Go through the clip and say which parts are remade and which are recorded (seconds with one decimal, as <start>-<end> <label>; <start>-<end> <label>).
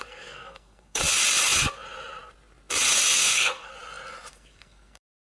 0.0-1.0 remade; 1.0-3.2 recorded; 3.2-3.7 remade; 3.7-4.3 recorded; 4.3-5.3 remade